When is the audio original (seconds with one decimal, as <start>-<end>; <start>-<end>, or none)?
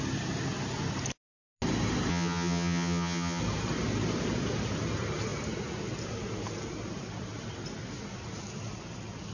0.0-2.1; 3.4-9.3